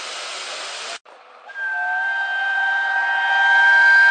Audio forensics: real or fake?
real